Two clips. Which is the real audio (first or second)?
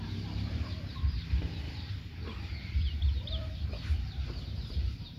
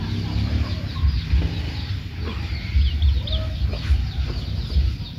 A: second